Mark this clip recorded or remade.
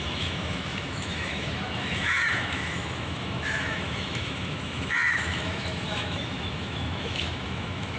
remade